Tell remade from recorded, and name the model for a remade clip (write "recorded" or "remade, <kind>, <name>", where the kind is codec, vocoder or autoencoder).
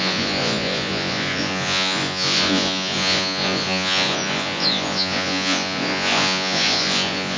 remade, vocoder, Vocos